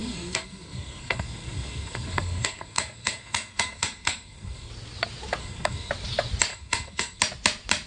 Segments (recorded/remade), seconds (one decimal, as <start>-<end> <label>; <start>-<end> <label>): 0.0-4.7 remade; 4.7-5.4 recorded; 5.4-5.9 remade; 5.9-6.5 recorded; 6.5-7.2 remade; 7.2-7.9 recorded